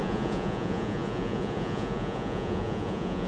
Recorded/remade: remade